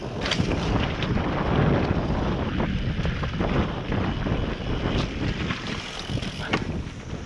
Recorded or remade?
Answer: recorded